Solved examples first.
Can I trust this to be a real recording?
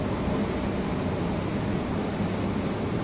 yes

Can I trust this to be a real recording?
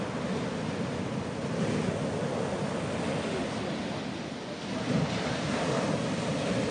yes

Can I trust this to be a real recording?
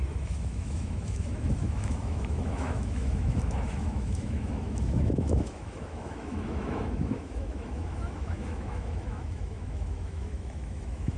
no